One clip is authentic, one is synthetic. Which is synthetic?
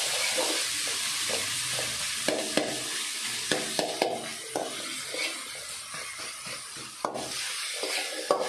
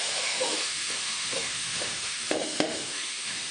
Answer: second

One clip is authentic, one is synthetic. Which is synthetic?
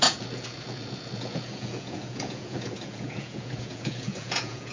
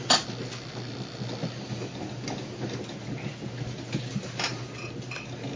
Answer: first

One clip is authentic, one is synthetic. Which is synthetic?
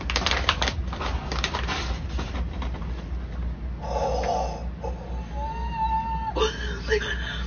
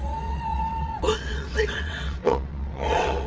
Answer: second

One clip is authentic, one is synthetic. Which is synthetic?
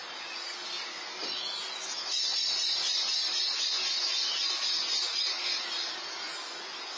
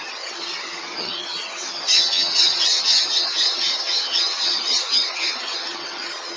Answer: second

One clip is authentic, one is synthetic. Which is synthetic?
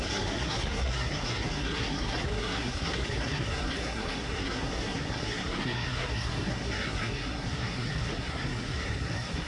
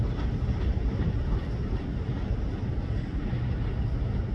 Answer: first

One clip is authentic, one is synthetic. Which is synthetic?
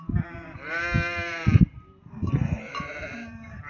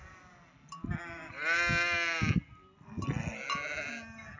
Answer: first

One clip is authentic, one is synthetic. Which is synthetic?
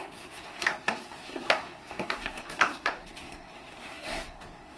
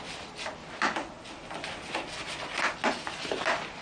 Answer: first